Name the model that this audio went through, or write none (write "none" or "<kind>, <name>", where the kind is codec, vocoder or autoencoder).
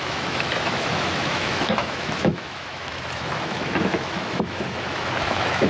autoencoder, DAC-VAE